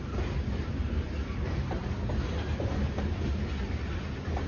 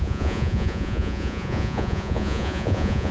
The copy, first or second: second